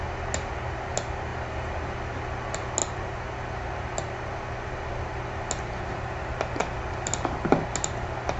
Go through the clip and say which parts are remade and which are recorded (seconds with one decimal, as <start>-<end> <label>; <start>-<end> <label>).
0.0-8.4 recorded